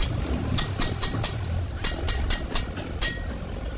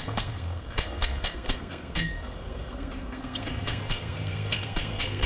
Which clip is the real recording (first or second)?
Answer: first